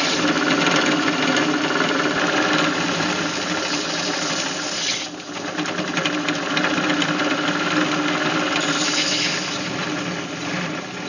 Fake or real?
real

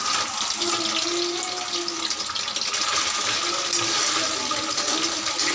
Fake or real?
real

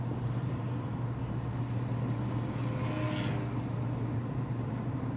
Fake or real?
real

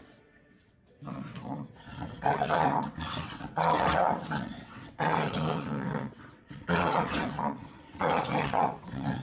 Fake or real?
fake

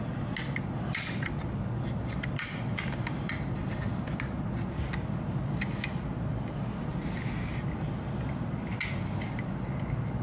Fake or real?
real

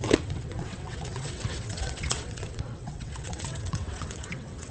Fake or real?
fake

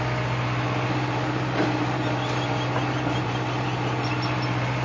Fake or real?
real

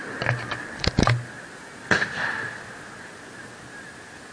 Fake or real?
real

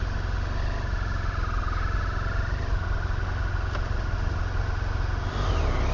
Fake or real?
real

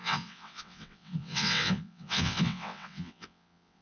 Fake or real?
fake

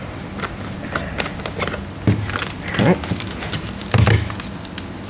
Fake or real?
real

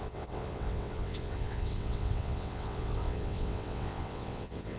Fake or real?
fake